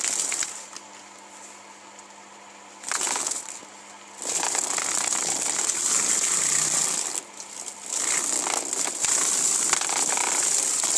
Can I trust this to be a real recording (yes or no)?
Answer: yes